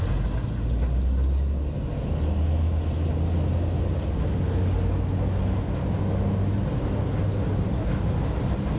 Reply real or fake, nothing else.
real